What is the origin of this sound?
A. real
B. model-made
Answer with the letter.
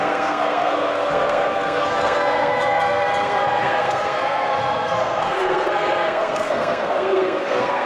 B